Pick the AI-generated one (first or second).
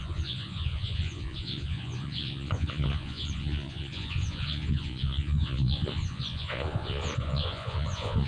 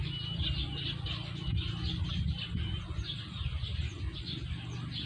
first